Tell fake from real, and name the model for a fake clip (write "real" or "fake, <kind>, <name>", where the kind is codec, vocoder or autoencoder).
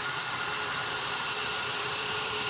fake, vocoder, BigVGAN v2